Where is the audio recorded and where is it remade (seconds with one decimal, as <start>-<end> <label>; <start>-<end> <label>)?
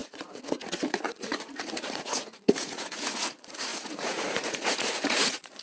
0.0-5.6 remade